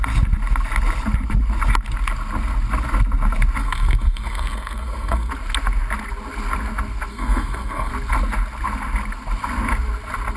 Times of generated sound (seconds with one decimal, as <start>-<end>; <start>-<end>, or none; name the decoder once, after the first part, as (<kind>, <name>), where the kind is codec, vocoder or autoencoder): 3.6-5.3 (codec, SNAC); 7.1-7.9